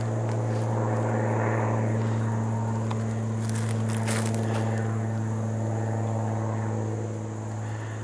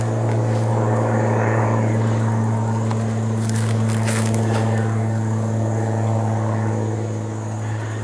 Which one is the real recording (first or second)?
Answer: first